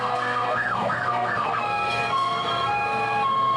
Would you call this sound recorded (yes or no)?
no